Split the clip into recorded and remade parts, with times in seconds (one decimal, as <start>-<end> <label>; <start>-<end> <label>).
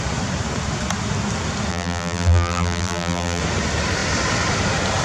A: 0.0-1.7 recorded; 1.7-3.4 remade; 3.4-5.0 recorded